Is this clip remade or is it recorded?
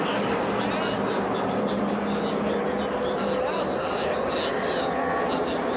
recorded